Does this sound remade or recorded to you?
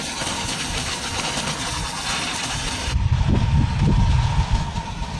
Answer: recorded